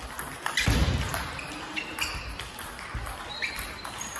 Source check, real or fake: real